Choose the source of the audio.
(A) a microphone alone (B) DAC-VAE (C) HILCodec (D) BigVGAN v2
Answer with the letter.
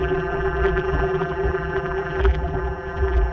D